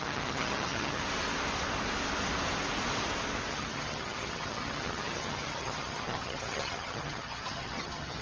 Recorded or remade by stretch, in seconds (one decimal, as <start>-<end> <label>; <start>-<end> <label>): 0.0-1.0 remade; 1.0-3.5 recorded; 3.5-8.2 remade